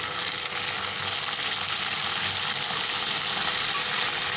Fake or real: real